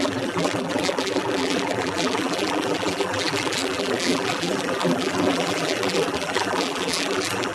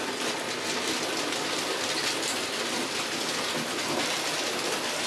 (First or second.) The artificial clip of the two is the first